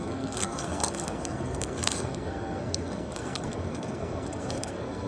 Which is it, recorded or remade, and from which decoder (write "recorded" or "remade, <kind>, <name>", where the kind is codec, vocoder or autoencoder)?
remade, codec, SNAC